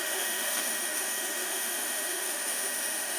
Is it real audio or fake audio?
fake